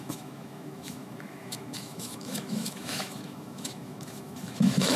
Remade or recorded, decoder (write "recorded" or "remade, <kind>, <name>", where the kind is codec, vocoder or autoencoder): remade, autoencoder, DAC-VAE